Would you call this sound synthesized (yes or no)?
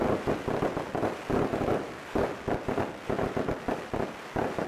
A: no